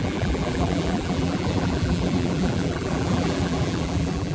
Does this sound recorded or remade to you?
remade